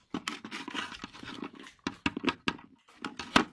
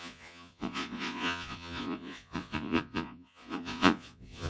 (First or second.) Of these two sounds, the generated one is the second